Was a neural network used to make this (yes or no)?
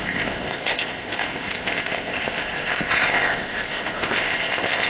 yes